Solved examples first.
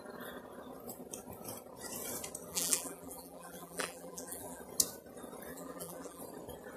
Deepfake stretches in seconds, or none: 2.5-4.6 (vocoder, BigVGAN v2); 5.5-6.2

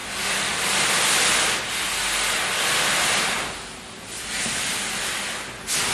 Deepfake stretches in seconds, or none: none